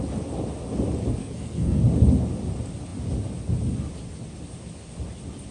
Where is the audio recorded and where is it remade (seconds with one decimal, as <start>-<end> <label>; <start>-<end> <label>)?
0.0-1.2 recorded; 1.2-1.8 remade; 1.8-5.5 recorded